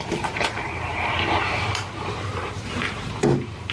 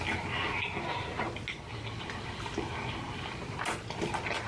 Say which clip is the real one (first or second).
second